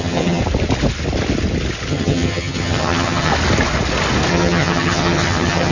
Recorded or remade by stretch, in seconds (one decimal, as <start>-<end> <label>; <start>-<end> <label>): 0.0-0.4 remade; 0.4-1.9 recorded; 1.9-3.3 remade; 3.3-4.3 recorded; 4.3-5.7 remade